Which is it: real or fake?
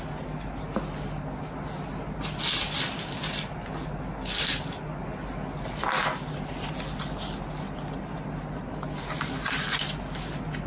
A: real